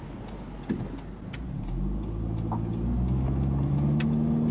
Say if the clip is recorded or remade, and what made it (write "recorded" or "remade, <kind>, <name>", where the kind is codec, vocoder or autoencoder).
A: recorded